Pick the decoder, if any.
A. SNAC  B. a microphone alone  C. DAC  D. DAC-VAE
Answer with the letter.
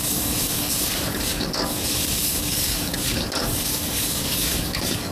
C